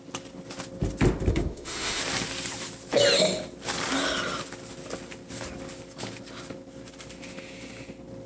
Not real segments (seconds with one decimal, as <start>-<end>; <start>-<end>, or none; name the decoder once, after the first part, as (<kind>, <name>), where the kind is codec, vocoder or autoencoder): 1.3-2.0 (autoencoder, DAC-VAE)